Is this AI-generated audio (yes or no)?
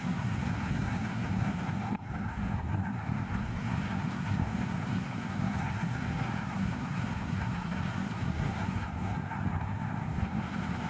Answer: yes